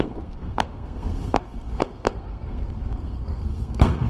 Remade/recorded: remade